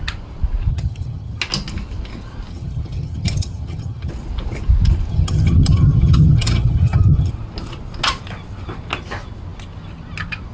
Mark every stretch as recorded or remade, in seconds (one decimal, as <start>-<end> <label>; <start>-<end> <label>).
0.0-0.7 recorded; 0.7-1.4 remade; 1.4-2.5 recorded; 2.5-4.1 remade; 4.1-5.1 recorded; 5.1-7.3 remade; 7.3-10.5 recorded